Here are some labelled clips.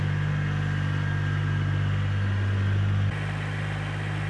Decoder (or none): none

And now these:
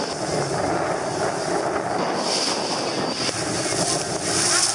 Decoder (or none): none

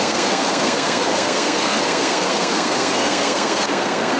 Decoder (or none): codec, SNAC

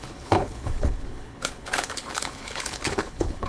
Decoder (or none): codec, HILCodec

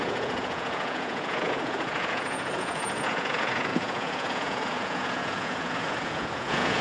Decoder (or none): vocoder, Vocos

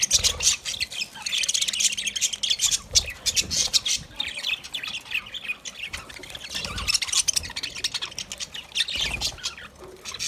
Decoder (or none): none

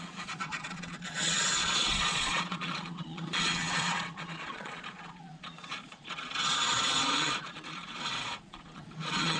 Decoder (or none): vocoder, Vocos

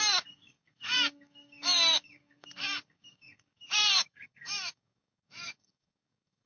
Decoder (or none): codec, DAC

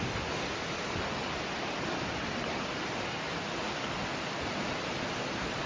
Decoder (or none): none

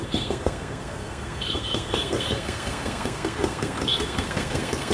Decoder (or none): codec, SNAC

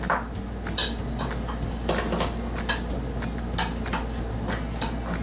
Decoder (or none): none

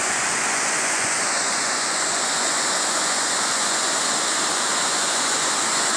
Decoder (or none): vocoder, Vocos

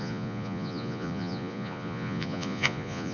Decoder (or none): vocoder, Vocos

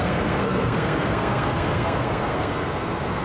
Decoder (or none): codec, SNAC